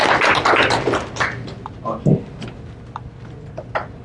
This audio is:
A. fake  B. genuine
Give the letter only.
B